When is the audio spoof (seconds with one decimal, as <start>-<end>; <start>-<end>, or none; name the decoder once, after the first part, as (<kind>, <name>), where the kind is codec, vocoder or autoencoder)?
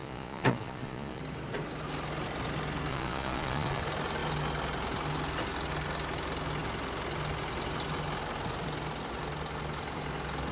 0.0-1.2 (vocoder, Vocos); 2.9-3.8